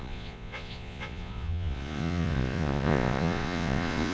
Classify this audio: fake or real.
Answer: fake